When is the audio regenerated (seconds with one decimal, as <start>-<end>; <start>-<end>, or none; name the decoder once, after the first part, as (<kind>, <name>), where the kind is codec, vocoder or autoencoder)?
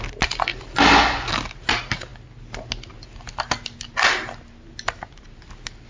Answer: none